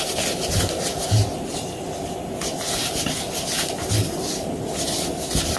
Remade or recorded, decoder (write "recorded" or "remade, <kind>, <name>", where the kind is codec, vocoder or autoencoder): recorded